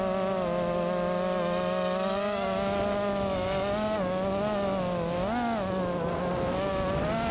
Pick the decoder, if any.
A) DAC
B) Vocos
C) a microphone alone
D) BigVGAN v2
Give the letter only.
C